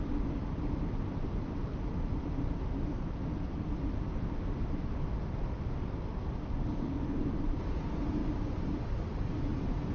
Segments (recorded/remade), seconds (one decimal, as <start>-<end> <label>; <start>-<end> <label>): 0.0-9.9 recorded